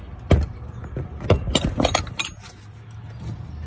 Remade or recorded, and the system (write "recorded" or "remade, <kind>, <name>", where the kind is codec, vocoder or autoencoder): recorded